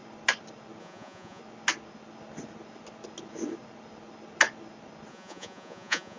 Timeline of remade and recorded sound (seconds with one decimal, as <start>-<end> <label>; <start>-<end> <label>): 0.0-0.8 recorded; 0.8-1.4 remade; 1.4-5.1 recorded; 5.1-6.2 remade